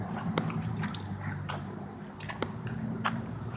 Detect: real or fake fake